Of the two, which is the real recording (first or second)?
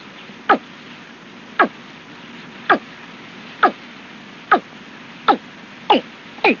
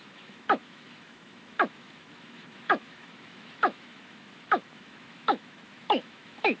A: first